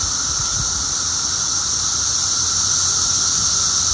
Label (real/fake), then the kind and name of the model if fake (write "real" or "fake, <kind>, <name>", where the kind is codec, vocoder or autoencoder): real